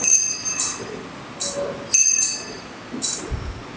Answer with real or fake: real